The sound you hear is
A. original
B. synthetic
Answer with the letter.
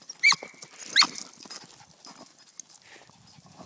A